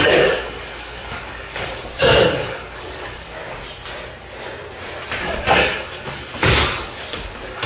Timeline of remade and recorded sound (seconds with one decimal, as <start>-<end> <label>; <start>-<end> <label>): 0.0-3.4 remade; 3.4-5.2 recorded; 5.2-7.7 remade